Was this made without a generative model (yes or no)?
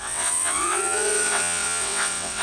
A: no